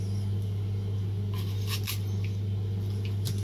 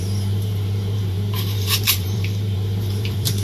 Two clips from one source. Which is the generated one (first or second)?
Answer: second